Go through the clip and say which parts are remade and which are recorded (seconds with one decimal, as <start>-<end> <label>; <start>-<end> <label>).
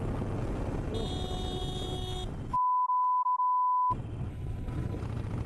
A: 0.0-4.3 recorded; 4.3-5.0 remade; 5.0-5.5 recorded